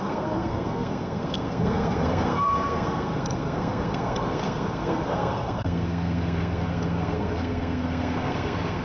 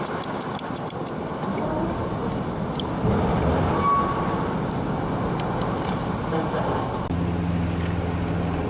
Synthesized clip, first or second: first